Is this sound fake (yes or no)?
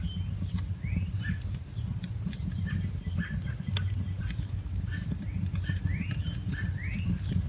no